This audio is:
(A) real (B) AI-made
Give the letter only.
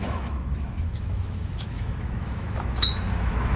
B